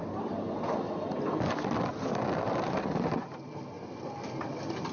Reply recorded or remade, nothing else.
recorded